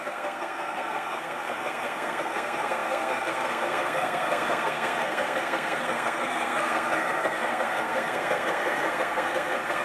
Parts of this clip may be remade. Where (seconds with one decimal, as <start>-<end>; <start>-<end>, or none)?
0.0-9.8

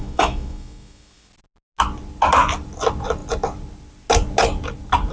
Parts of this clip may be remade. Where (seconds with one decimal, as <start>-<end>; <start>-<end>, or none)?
0.0-1.3

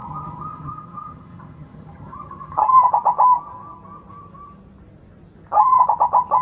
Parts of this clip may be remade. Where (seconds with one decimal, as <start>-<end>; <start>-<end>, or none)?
0.0-2.8

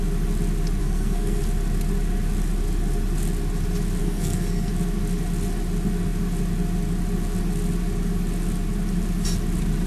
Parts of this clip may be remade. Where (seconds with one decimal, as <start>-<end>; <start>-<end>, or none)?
0.8-1.4; 4.0-4.7

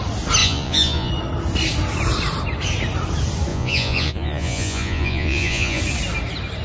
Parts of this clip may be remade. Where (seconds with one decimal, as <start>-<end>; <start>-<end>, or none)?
0.4-1.1; 3.5-5.8